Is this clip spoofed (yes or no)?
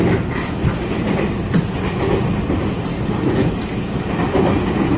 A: no